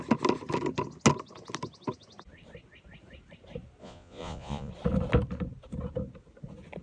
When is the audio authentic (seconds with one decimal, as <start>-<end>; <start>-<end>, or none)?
0.0-3.8; 4.7-6.8

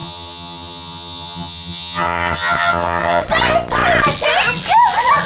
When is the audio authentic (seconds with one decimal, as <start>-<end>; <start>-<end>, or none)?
3.2-5.3